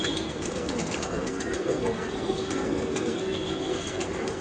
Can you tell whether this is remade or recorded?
remade